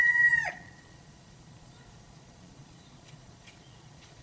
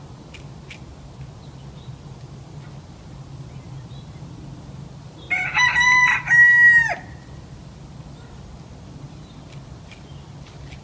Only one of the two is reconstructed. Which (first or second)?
first